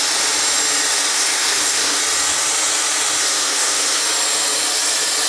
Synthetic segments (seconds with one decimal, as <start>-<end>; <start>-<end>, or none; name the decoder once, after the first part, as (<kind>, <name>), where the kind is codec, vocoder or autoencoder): 1.1-2.0 (codec, SNAC); 3.2-4.0